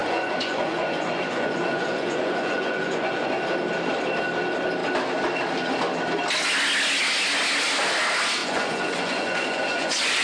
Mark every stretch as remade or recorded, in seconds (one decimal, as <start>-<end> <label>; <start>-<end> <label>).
0.0-3.3 remade; 3.3-8.4 recorded; 8.4-10.2 remade